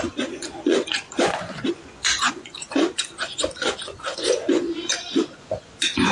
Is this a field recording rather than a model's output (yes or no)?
no